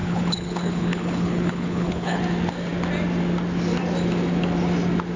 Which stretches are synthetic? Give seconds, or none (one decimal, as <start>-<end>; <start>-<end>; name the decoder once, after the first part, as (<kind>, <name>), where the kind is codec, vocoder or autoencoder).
0.0-2.2 (codec, HILCodec)